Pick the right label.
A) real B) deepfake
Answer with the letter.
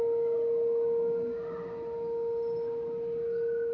A